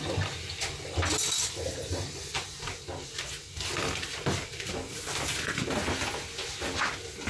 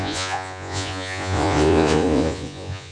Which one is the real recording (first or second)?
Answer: first